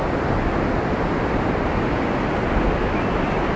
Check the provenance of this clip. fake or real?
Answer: real